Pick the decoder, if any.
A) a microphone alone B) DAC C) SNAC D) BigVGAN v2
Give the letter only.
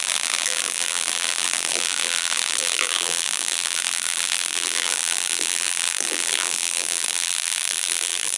D